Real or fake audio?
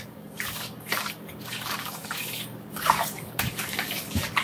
fake